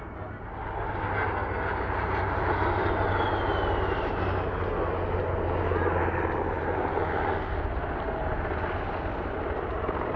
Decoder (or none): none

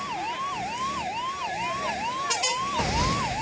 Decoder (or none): none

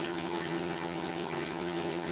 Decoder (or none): vocoder, HiFi-GAN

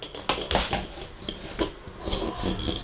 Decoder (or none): none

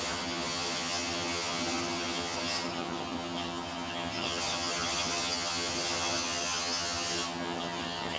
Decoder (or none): vocoder, HiFi-GAN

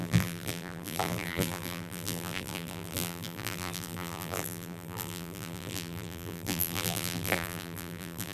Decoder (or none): vocoder, BigVGAN v2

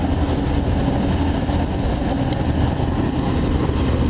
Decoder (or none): none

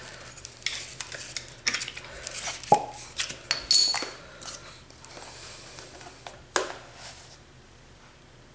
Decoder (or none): none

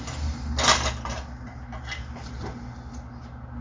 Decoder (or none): none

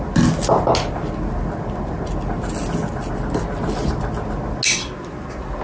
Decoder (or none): none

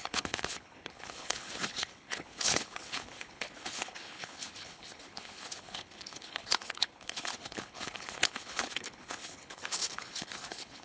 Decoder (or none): codec, HILCodec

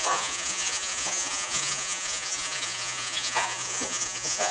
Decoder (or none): vocoder, Vocos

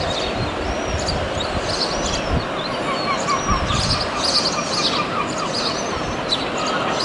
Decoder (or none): none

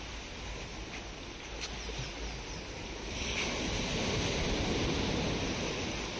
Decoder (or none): none